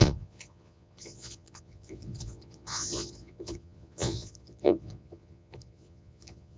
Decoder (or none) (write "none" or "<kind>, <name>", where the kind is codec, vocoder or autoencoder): vocoder, Vocos